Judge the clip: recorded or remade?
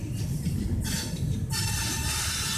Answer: recorded